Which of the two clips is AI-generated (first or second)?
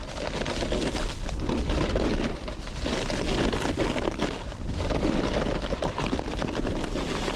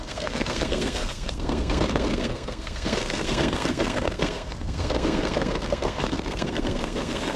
second